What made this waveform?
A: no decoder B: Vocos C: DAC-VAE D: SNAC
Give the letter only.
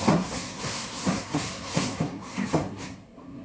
D